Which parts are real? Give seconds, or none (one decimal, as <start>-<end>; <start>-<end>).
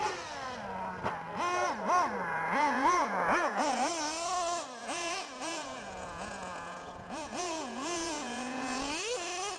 0.0-2.3; 3.9-4.8; 8.9-9.6